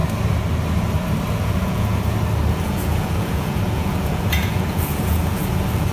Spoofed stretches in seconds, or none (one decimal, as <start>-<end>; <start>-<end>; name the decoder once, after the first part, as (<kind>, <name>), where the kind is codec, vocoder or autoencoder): 1.3-1.9 (vocoder, Vocos); 2.5-5.9